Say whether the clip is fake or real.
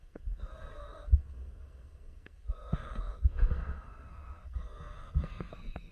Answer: fake